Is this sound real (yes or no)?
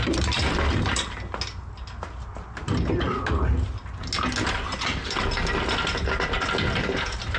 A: yes